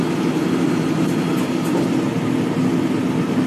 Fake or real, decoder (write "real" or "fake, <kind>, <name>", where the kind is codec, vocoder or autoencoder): real